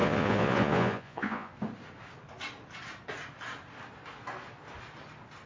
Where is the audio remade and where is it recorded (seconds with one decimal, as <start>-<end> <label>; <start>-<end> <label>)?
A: 0.0-1.5 remade; 1.5-5.5 recorded